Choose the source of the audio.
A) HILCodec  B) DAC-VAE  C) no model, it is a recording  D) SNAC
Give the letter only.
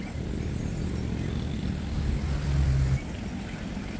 C